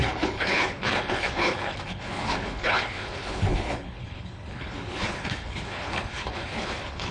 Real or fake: fake